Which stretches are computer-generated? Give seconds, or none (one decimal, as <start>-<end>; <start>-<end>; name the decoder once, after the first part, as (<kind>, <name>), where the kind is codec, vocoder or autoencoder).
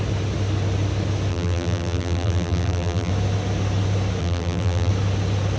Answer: 1.3-3.1 (vocoder, BigVGAN v2); 4.2-4.9